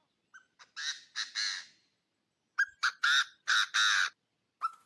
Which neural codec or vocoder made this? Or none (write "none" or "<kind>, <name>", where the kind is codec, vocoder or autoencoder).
none